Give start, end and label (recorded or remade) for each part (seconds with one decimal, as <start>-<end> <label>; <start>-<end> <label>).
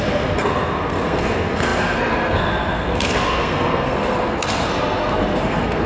0.0-5.9 remade